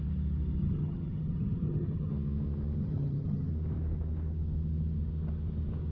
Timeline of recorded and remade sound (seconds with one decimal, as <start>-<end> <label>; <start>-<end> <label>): 0.0-0.6 recorded; 0.6-2.1 remade; 2.1-2.8 recorded; 2.8-3.5 remade; 3.5-5.9 recorded